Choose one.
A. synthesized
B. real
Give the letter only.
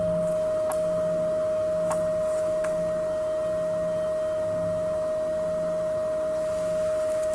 B